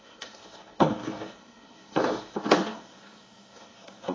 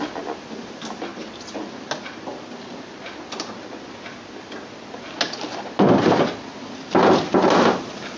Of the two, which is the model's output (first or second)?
first